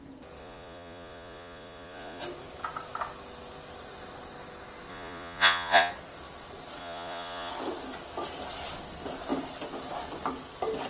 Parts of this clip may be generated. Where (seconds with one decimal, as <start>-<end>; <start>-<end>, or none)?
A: 0.4-2.2; 4.9-5.9; 6.8-7.5